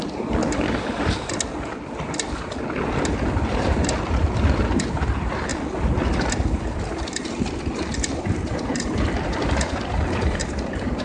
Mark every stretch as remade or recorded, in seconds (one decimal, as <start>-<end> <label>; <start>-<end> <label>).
0.0-0.4 remade; 0.4-2.8 recorded; 2.8-11.0 remade